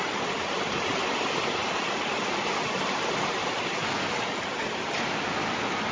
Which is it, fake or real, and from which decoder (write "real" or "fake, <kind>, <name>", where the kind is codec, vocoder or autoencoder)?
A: real